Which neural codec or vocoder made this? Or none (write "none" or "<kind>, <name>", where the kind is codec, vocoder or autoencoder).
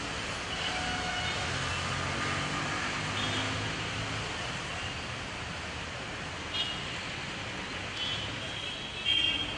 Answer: none